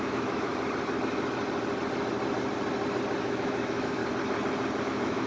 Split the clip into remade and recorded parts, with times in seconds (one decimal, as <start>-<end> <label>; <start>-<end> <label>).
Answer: 0.0-0.5 remade; 0.5-3.2 recorded; 3.2-4.0 remade; 4.0-4.8 recorded; 4.8-5.3 remade